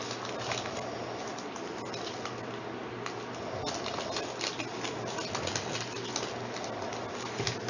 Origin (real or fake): real